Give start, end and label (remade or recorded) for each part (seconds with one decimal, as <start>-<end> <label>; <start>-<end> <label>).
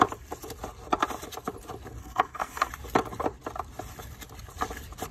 0.0-2.0 recorded; 2.0-2.7 remade; 2.7-5.1 recorded